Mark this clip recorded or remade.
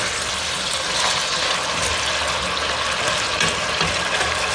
recorded